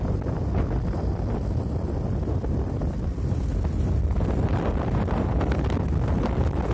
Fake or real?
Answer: real